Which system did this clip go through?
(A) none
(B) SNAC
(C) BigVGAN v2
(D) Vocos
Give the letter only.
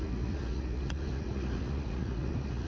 D